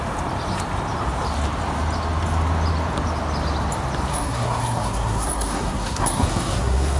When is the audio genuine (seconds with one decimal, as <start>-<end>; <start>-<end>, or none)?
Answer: 0.0-4.1